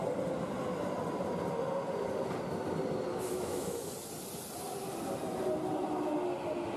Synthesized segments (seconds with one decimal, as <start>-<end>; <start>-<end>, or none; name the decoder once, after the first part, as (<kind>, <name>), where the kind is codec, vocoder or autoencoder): 3.1-3.9 (autoencoder, DAC-VAE)